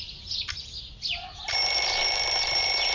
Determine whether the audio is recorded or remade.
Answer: recorded